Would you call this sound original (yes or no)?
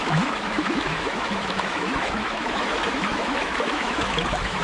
no